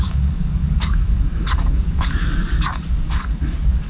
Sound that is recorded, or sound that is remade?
remade